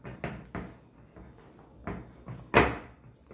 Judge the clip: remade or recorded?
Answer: recorded